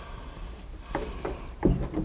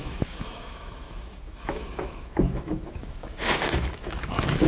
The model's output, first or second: second